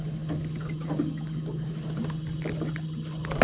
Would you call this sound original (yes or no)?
yes